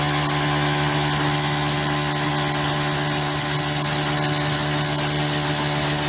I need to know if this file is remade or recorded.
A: recorded